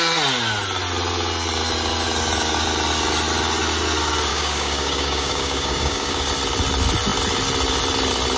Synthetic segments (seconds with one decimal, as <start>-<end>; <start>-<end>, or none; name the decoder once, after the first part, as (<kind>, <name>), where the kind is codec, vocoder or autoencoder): 4.3-6.3 (codec, DAC)